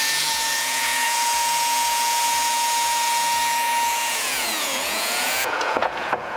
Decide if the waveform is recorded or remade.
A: remade